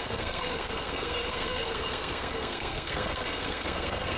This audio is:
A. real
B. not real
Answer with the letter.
B